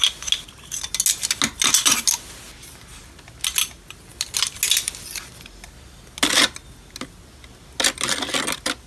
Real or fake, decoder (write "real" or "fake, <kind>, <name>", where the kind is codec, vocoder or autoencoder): real